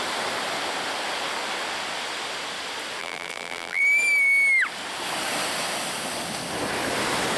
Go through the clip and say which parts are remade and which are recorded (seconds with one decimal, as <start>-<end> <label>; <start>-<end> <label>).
0.0-3.0 recorded; 3.0-3.8 remade; 3.8-7.4 recorded